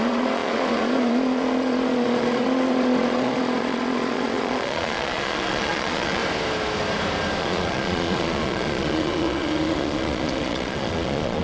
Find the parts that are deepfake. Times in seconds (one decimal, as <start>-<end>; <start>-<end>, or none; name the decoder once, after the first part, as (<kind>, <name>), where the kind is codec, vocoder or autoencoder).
0.0-6.2 (vocoder, Vocos); 7.4-11.4